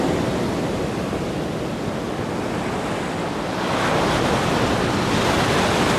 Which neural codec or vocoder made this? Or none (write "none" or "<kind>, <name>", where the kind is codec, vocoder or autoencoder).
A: none